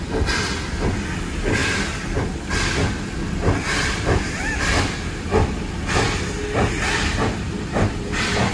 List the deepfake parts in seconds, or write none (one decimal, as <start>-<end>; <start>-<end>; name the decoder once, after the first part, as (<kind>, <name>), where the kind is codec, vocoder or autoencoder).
none